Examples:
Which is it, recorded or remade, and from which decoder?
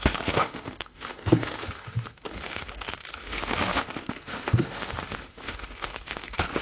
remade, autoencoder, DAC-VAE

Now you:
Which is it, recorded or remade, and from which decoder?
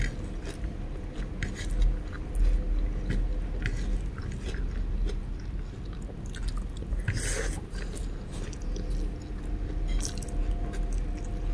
recorded